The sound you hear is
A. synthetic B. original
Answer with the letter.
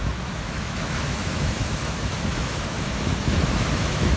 A